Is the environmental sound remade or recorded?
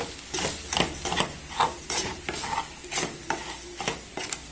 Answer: recorded